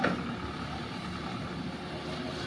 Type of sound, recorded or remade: recorded